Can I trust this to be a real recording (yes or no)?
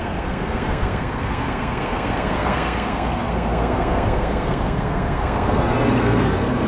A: no